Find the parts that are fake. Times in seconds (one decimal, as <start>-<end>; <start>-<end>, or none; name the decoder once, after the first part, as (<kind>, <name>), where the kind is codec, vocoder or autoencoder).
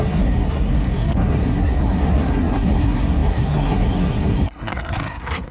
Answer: 0.0-5.5 (codec, SNAC)